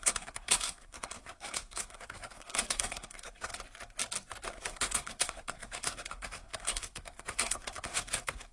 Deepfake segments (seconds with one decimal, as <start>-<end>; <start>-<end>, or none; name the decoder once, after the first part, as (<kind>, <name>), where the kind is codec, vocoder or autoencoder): 0.0-3.5 (codec, SNAC); 4.5-8.5